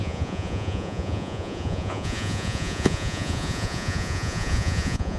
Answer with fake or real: fake